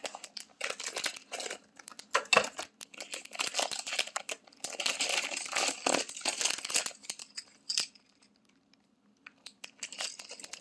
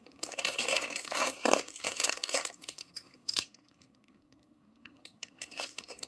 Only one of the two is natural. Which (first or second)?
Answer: first